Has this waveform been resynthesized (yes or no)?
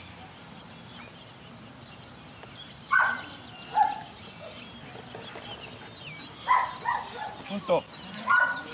no